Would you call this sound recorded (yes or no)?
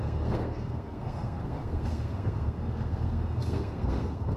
no